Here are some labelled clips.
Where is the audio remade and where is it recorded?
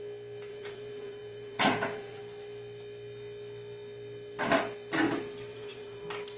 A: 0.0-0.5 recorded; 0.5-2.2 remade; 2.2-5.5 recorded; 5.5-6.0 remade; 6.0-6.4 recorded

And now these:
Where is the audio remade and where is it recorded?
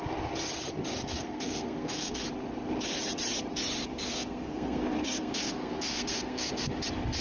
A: 0.0-1.1 recorded; 1.1-2.2 remade; 2.2-4.0 recorded; 4.0-6.7 remade; 6.7-7.2 recorded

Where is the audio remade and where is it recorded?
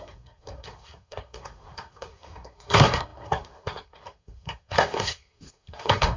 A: 0.0-6.2 remade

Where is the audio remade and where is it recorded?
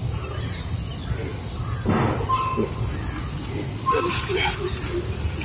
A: 0.0-0.7 remade; 0.7-5.4 recorded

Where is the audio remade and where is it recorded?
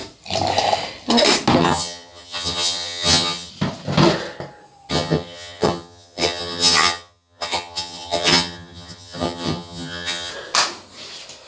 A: 0.0-1.6 recorded; 1.6-3.5 remade; 3.5-4.9 recorded; 4.9-10.3 remade; 10.3-11.5 recorded